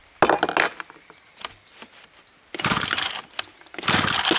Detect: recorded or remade recorded